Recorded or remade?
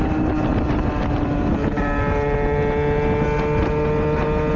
recorded